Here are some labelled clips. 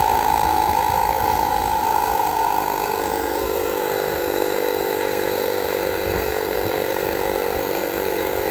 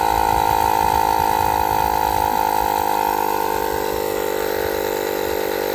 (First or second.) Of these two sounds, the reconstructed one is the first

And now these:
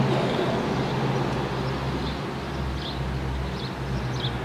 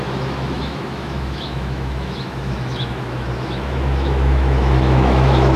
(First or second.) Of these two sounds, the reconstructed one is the second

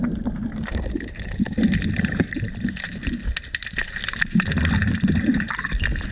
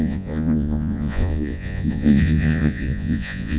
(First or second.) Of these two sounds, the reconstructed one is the second